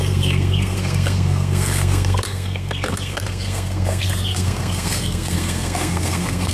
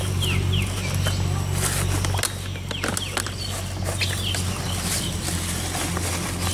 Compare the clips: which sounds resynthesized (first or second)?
first